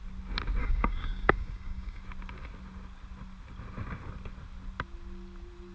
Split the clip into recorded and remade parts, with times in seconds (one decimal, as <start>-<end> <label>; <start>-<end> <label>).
0.0-0.6 recorded; 0.6-2.0 remade; 2.0-5.7 recorded